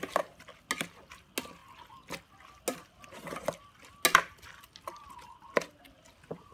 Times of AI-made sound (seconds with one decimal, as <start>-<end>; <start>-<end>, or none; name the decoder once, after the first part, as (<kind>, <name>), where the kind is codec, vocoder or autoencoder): none